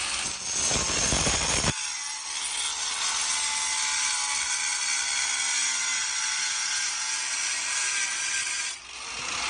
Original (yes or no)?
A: yes